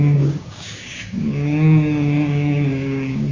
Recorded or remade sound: remade